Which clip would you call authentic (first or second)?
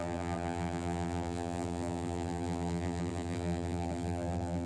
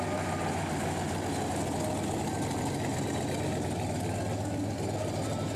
second